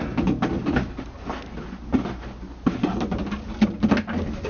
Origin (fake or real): real